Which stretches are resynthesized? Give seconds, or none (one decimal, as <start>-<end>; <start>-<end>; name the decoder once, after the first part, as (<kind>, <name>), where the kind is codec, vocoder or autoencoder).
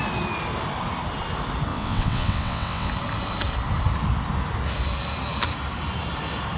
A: 1.7-2.9 (vocoder, WaveNeXt)